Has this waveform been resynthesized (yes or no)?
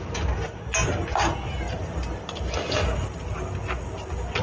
no